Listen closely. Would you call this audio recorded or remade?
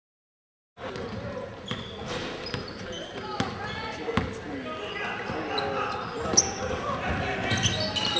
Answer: recorded